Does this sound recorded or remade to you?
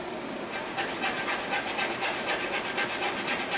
recorded